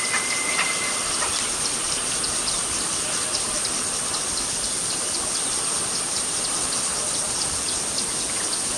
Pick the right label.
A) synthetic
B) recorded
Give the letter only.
B